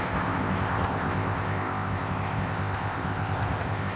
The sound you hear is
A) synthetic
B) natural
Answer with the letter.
A